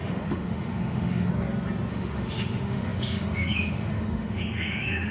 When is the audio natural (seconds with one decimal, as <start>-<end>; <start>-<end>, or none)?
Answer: 1.3-1.9